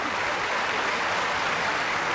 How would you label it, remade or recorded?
recorded